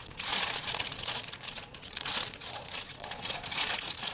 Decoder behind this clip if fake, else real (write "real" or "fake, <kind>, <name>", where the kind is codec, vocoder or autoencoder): fake, vocoder, Vocos